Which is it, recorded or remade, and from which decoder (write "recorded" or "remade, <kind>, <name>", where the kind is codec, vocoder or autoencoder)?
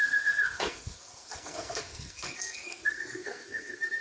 remade, codec, SNAC